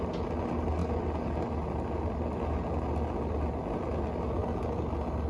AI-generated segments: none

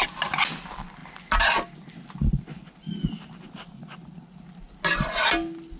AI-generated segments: none

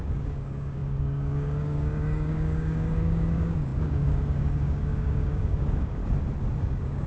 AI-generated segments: 0.0-6.0 (codec, DAC); 6.6-7.1